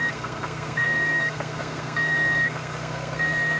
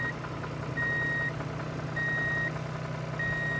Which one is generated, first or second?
first